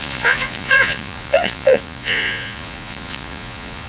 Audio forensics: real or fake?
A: fake